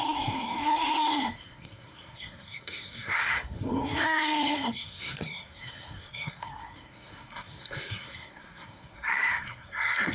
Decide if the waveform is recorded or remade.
remade